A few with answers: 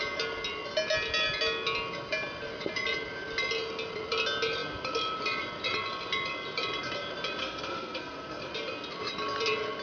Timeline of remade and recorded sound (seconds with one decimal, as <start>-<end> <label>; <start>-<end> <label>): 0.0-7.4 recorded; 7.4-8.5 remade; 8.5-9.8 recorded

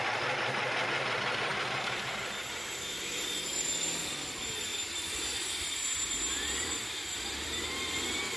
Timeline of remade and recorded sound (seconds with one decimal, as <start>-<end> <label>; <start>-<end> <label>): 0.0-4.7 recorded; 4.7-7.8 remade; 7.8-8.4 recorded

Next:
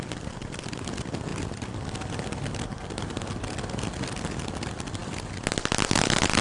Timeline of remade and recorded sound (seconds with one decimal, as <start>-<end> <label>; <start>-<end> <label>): 0.0-6.4 recorded

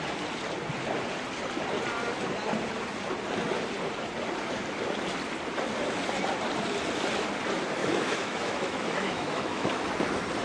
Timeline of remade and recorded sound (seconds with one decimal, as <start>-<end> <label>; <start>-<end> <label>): 0.0-7.8 recorded; 7.8-9.9 remade; 9.9-10.4 recorded